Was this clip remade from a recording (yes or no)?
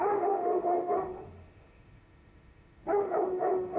yes